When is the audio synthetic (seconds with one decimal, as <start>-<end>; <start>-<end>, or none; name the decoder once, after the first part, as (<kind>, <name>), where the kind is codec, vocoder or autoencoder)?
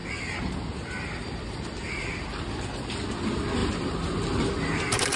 none